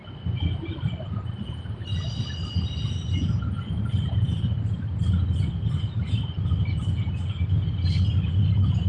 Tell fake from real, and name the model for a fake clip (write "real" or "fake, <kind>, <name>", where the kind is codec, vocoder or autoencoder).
real